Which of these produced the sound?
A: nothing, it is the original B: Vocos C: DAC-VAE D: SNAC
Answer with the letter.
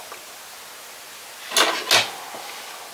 A